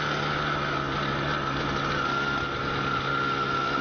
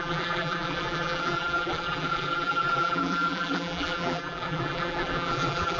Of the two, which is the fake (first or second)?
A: second